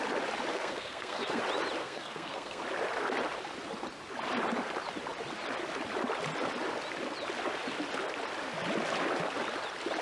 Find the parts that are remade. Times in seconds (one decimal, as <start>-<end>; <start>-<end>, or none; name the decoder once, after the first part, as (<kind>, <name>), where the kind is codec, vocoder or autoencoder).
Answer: 0.5-1.4 (codec, SNAC); 1.8-2.6